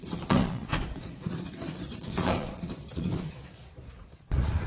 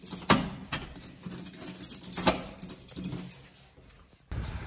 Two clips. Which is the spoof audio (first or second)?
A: first